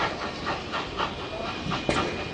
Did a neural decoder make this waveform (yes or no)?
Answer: no